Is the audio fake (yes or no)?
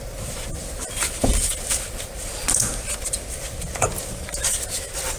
no